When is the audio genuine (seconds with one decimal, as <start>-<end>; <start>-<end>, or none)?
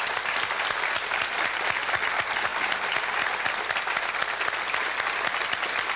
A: 0.0-6.0